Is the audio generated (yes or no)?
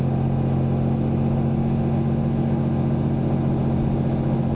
no